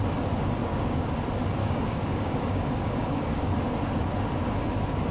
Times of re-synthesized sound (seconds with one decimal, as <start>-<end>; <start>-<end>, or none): 0.6-1.1; 1.6-3.5